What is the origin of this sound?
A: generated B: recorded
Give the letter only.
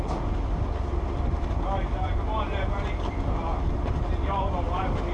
B